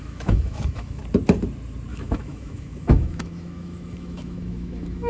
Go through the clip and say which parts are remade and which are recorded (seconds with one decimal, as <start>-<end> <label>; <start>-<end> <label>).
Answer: 0.0-1.0 remade; 1.0-1.9 recorded; 1.9-5.1 remade